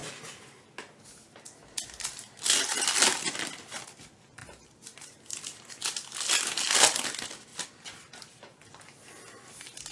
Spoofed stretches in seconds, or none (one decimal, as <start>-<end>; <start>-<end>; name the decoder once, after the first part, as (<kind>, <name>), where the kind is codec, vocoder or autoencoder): 4.4-5.8 (vocoder, BigVGAN v2); 7.5-8.6